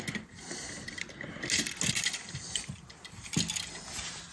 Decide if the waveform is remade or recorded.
recorded